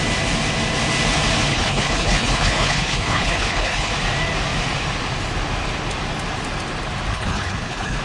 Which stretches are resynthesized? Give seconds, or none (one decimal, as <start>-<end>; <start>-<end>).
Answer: 1.5-3.9; 7.1-8.0